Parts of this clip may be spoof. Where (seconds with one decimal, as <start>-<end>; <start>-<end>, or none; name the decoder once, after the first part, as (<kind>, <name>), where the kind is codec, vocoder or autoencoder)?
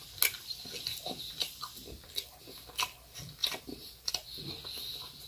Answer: 3.4-4.1 (vocoder, BigVGAN v2)